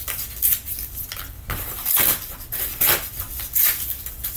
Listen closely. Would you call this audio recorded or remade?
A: recorded